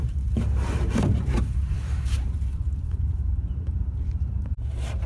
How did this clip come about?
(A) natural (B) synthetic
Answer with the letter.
B